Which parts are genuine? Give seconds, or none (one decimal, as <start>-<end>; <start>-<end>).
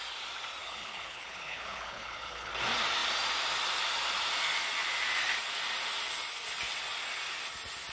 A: 0.0-0.6; 2.5-7.9